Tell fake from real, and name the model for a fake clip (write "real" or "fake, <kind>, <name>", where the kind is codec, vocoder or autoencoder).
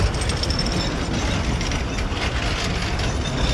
real